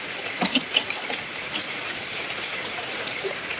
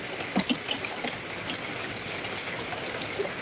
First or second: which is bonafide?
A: second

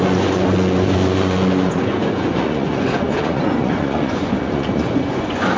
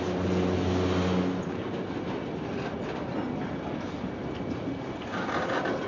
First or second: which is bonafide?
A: second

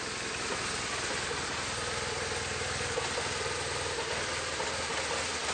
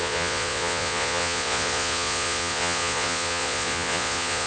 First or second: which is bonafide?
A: first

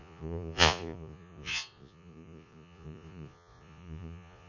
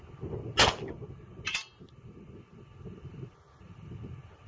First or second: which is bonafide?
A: second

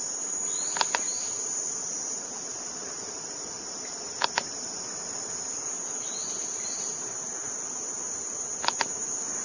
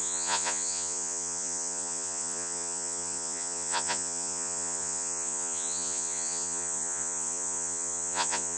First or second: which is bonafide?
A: first